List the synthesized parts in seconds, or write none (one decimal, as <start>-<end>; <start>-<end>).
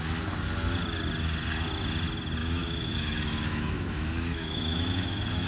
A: 2.4-5.5